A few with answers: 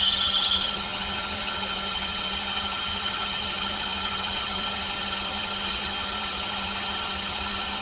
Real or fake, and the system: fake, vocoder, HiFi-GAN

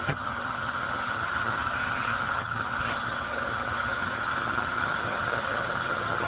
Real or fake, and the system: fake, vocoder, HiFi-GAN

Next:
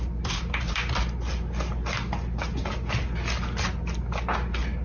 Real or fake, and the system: real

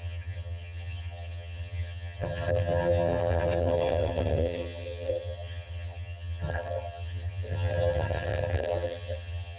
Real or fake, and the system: fake, vocoder, HiFi-GAN